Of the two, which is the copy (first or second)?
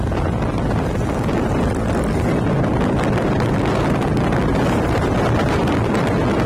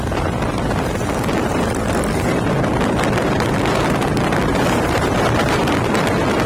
second